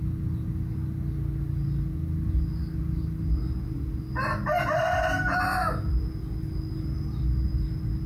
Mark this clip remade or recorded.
recorded